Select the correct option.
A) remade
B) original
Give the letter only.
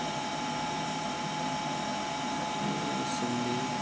B